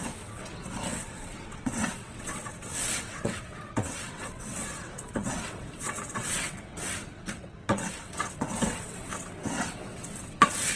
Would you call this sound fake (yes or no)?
yes